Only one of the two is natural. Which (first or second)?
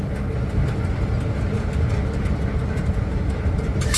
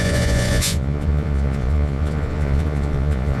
first